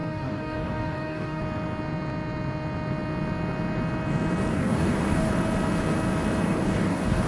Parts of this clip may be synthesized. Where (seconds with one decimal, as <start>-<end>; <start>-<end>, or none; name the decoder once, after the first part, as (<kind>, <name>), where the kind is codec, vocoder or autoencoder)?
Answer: 0.0-1.4 (codec, DAC); 4.5-5.3; 6.4-7.3

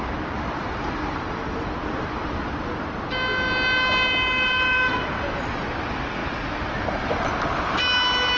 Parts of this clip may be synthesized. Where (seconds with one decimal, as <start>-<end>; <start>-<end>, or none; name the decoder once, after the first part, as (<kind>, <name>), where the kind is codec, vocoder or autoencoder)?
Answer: none